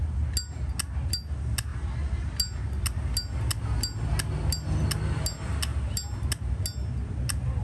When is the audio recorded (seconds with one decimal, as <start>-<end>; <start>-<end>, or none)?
0.0-7.6